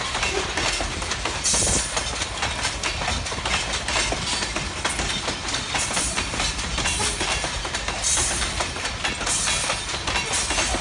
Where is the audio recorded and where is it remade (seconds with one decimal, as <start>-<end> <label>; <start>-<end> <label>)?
0.0-5.4 recorded; 5.4-9.0 remade; 9.0-10.8 recorded